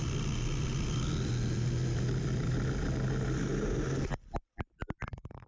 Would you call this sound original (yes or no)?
yes